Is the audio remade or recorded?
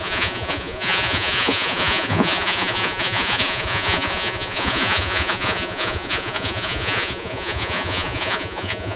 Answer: remade